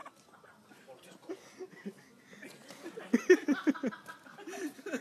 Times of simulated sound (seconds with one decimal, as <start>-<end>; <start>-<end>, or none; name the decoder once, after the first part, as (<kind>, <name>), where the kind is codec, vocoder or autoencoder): none